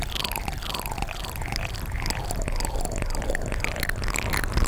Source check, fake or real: real